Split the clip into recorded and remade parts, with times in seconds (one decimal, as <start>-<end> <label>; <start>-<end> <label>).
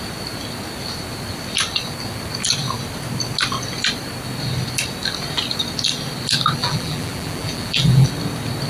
0.0-6.6 recorded; 6.6-8.1 remade; 8.1-8.7 recorded